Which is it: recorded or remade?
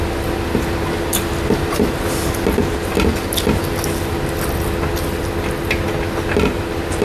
recorded